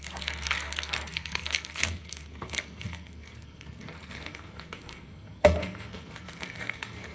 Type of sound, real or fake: fake